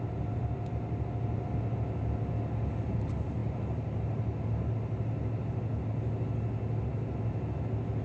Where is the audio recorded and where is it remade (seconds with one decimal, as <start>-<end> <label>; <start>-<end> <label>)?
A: 0.0-8.0 recorded